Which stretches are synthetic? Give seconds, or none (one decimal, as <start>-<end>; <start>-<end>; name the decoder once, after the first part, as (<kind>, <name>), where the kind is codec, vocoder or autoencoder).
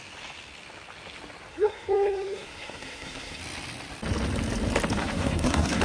1.5-3.4 (codec, SNAC); 5.0-5.8